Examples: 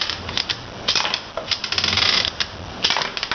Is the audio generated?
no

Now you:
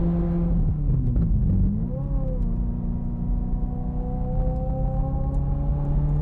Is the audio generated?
no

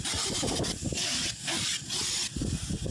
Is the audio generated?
no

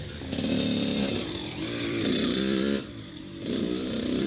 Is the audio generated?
yes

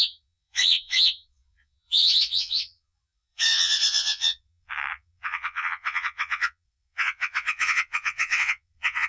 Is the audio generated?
yes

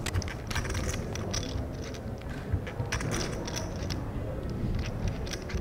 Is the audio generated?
no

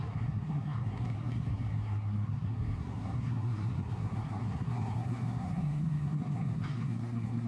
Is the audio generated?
yes